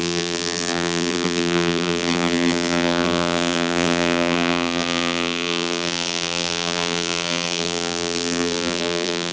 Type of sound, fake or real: fake